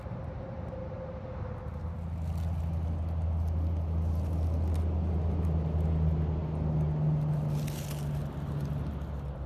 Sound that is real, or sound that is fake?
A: real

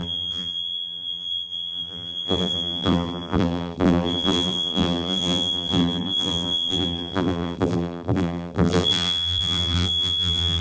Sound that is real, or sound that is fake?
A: fake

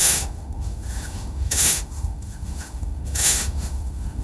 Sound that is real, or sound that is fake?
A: fake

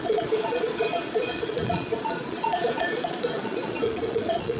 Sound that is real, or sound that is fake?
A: fake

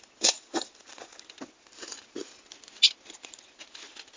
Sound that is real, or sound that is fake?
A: real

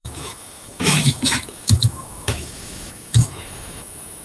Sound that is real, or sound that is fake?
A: fake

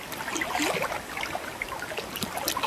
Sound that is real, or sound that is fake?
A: real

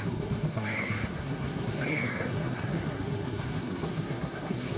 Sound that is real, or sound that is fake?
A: fake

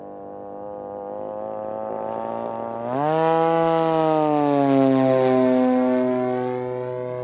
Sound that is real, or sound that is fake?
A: real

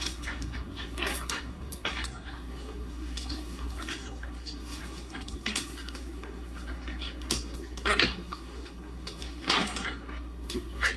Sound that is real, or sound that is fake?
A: fake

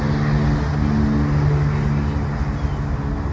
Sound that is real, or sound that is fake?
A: real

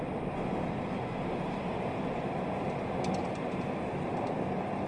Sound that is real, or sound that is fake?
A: real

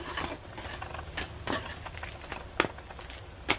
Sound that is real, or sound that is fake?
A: real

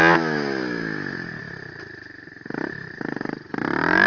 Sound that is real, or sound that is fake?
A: real